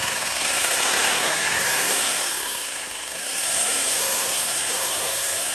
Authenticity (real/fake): fake